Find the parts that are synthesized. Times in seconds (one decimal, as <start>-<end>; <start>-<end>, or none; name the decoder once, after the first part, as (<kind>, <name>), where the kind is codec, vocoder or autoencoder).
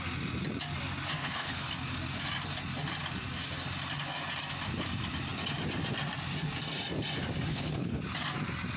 1.2-1.7 (codec, HILCodec); 7.5-8.0